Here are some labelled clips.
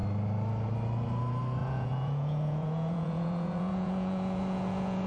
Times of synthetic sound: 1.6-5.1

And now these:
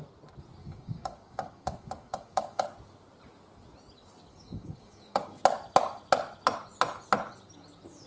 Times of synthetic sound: 0.6-2.6; 4.3-5.4

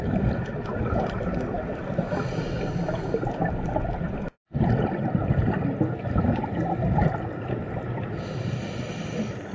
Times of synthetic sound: 0.0-9.5

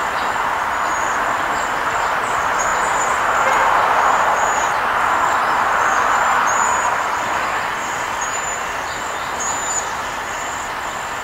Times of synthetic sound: none

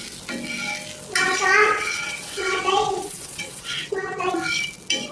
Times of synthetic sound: 1.6-4.3

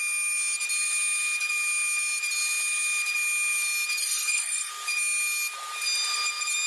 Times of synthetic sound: 4.0-4.7

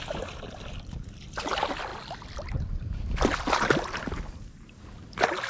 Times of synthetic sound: none

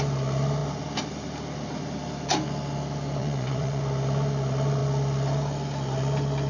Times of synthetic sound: 3.2-3.8